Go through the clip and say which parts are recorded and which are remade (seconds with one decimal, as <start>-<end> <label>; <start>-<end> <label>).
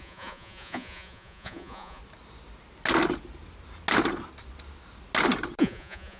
0.0-2.0 remade; 2.0-5.6 recorded; 5.6-6.2 remade